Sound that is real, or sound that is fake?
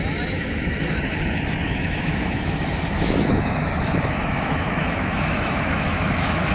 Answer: fake